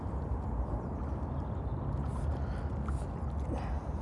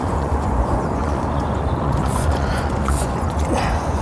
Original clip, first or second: first